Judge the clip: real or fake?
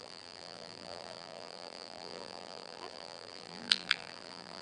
fake